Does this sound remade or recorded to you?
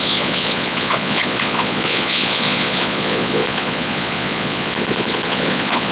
remade